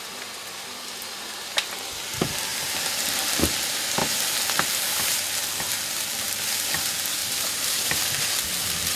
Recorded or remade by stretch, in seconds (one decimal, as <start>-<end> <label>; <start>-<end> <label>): 0.0-2.5 recorded; 2.5-3.0 remade; 3.0-7.2 recorded; 7.2-7.9 remade; 7.9-9.0 recorded